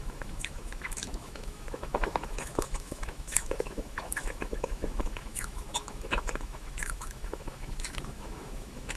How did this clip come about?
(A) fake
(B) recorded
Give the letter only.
A